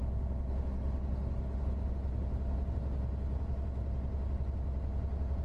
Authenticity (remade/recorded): recorded